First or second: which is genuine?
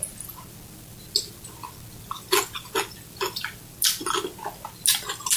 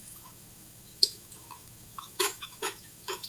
first